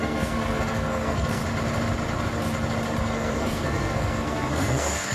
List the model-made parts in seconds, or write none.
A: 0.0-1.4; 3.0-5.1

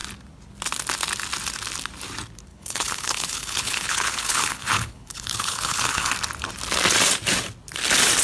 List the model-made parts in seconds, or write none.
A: 2.5-6.1

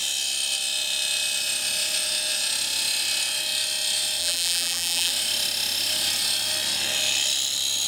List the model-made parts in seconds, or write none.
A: 4.2-5.1

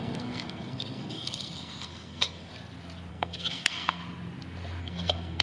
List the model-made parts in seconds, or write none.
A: 0.0-2.5; 3.1-4.0; 4.8-5.4

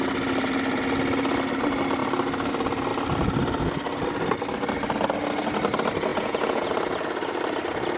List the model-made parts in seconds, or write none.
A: 6.1-6.7

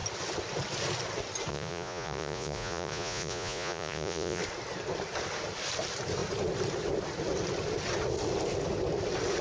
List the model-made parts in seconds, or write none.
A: 1.5-4.4

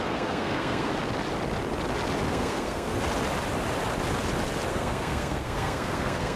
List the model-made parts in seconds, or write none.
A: 0.0-0.9; 2.3-2.9; 4.7-6.4

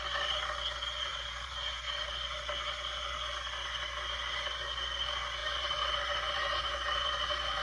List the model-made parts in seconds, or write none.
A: 1.1-2.1; 5.4-7.6